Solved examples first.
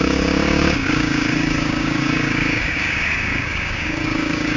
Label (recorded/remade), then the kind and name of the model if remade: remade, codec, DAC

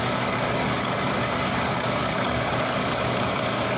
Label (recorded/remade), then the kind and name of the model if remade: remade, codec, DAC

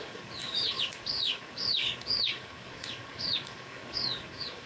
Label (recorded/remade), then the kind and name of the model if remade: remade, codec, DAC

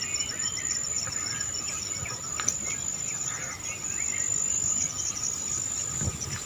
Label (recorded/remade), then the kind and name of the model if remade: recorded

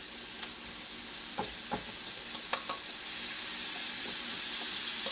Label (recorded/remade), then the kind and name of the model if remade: recorded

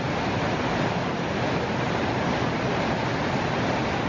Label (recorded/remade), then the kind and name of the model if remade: recorded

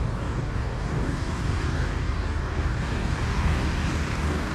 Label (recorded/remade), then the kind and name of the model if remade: remade, codec, DAC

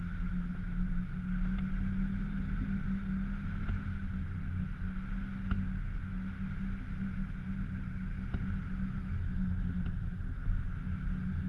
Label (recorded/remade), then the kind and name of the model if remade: recorded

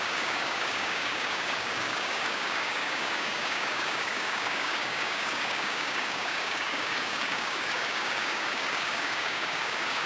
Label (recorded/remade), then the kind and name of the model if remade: remade, codec, DAC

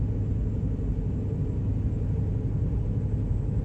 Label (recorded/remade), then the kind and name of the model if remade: recorded